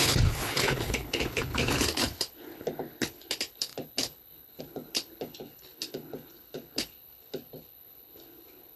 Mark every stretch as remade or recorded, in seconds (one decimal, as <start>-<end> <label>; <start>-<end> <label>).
0.0-8.8 remade